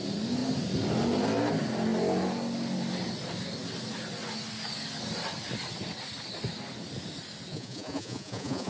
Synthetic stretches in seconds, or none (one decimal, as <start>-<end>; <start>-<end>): 7.5-8.7